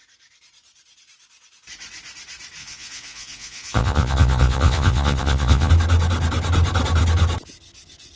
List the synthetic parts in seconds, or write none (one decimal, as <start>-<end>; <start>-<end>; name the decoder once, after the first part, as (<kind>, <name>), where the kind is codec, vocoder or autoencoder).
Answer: 2.6-5.7 (vocoder, Vocos)